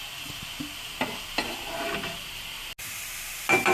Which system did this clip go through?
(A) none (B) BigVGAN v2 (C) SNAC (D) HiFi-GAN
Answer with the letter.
A